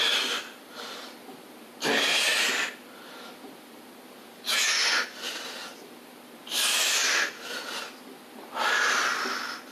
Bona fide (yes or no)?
no